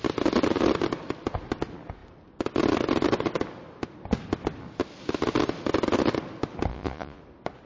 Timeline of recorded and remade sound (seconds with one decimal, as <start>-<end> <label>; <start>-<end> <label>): 0.0-6.7 recorded; 6.7-7.2 remade; 7.2-7.7 recorded